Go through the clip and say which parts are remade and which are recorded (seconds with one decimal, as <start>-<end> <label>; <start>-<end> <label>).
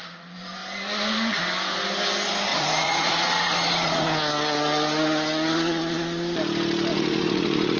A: 0.0-2.5 recorded; 2.5-4.0 remade; 4.0-6.9 recorded; 6.9-7.8 remade